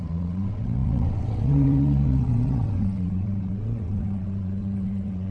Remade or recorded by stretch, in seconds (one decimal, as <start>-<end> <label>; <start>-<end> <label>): 0.0-5.3 remade